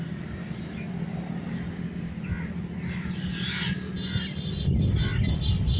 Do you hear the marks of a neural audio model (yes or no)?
no